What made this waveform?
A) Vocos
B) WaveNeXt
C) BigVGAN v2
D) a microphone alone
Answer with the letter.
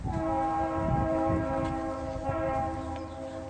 D